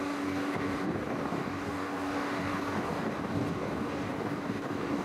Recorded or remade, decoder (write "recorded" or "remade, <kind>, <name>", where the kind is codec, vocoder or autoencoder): remade, codec, DAC